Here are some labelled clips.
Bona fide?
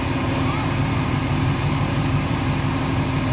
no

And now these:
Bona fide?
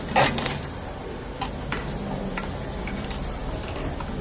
no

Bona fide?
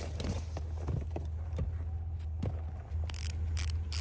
yes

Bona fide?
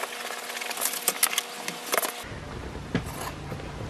yes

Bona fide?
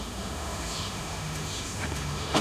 no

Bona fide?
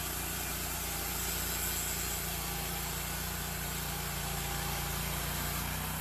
yes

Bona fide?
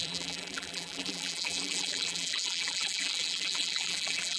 no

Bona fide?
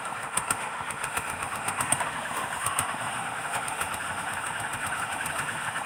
no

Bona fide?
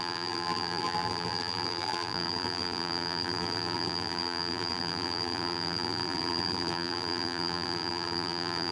no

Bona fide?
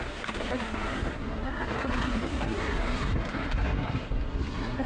no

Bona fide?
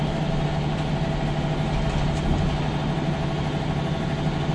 yes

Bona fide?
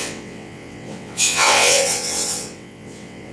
no